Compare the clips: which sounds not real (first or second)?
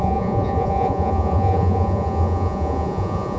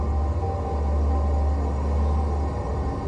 first